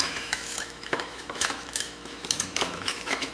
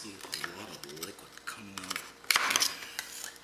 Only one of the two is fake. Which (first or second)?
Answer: first